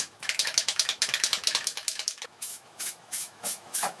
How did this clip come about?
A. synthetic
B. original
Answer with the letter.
A